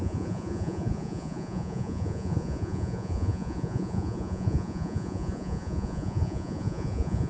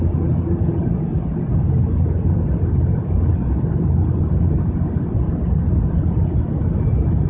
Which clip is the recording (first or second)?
second